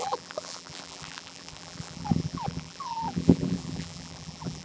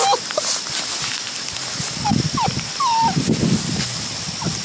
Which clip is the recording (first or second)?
second